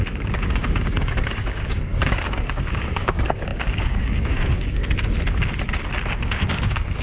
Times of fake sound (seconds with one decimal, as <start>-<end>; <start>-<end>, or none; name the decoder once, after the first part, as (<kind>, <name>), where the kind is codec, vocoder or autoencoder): 0.0-4.8 (codec, DAC); 6.5-7.0